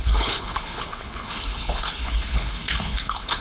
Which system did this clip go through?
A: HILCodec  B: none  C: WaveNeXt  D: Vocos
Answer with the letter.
A